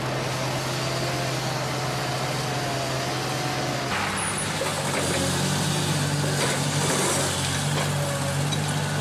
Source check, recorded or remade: recorded